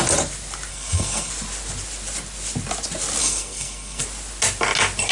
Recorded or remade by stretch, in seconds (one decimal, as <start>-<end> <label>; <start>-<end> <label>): 0.0-0.7 recorded; 0.7-1.3 remade; 1.3-3.2 recorded; 3.2-4.0 remade; 4.0-5.1 recorded